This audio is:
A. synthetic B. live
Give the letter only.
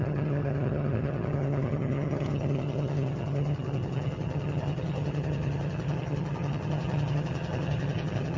A